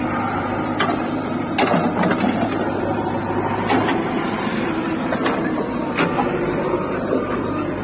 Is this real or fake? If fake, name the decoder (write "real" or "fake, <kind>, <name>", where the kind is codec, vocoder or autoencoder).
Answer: fake, vocoder, BigVGAN v2